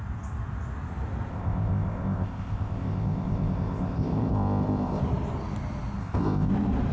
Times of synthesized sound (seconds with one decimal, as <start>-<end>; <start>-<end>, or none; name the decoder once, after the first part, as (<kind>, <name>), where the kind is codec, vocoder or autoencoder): 1.3-5.0 (codec, ZipCodec); 6.0-6.5